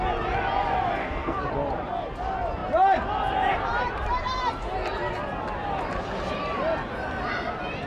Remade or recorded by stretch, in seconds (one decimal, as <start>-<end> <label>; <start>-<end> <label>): 0.0-1.0 recorded; 1.0-1.5 remade; 1.5-7.9 recorded